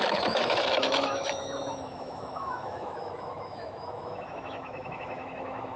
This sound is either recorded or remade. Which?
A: remade